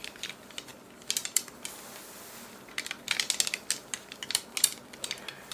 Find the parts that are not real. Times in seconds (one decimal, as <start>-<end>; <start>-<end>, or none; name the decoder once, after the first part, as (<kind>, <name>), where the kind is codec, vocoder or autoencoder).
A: none